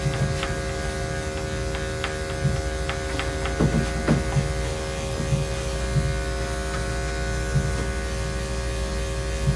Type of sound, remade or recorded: recorded